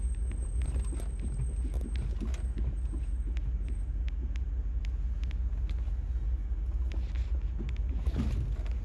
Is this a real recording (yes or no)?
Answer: yes